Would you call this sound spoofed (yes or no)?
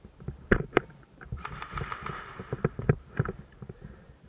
yes